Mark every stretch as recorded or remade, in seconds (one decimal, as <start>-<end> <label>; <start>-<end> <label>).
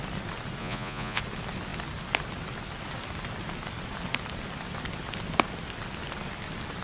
0.0-0.6 recorded; 0.6-1.2 remade; 1.2-6.8 recorded